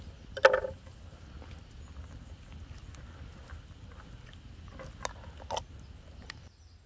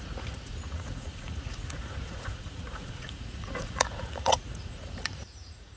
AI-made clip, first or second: second